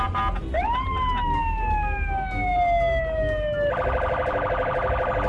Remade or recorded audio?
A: recorded